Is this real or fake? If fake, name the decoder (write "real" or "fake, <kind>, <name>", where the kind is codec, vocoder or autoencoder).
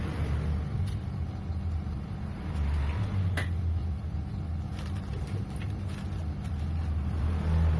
real